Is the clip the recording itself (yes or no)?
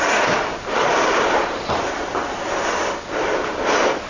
yes